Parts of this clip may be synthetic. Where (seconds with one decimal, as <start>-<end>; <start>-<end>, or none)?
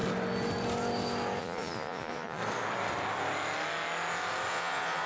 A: 1.4-2.4; 4.5-5.1